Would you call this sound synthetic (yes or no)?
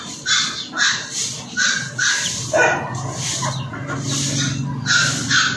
no